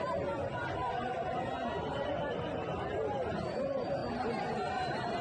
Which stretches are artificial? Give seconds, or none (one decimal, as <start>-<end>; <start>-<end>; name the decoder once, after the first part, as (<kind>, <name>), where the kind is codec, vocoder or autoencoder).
none